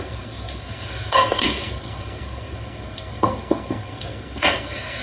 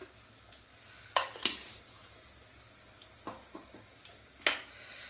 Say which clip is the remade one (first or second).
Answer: first